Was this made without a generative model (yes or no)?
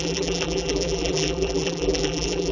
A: no